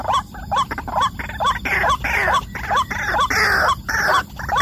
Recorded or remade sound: recorded